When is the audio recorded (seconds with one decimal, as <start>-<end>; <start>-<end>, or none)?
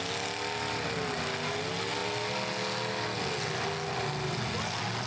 0.0-5.1